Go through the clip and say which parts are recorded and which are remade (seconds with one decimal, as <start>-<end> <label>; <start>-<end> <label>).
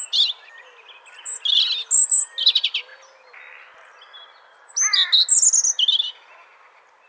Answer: 0.0-7.1 recorded